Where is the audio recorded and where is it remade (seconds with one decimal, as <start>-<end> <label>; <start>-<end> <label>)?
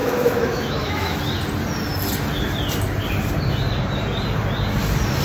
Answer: 0.0-1.2 remade; 1.2-5.2 recorded